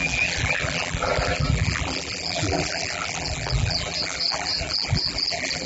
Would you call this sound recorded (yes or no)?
no